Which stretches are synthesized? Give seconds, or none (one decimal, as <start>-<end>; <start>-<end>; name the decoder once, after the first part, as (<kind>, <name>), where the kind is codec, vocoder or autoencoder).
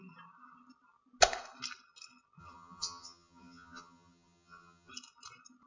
2.4-4.9 (vocoder, HiFi-GAN)